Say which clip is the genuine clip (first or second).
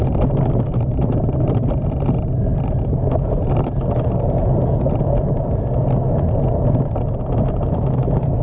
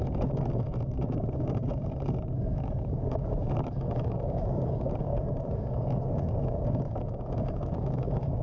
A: first